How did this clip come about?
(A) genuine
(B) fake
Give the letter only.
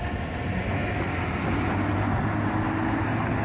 A